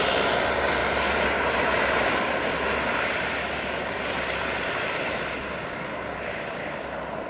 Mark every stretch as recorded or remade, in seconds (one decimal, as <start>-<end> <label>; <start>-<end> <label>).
0.0-0.8 recorded; 0.8-5.2 remade; 5.2-5.9 recorded; 5.9-6.5 remade; 6.5-7.3 recorded